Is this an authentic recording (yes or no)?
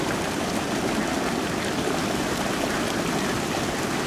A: yes